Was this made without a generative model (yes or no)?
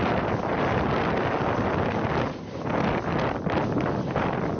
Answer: yes